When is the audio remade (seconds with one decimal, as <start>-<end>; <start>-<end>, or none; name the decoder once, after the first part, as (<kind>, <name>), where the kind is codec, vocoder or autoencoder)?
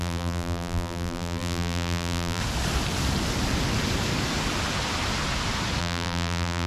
0.0-2.4 (vocoder, BigVGAN v2); 5.8-6.7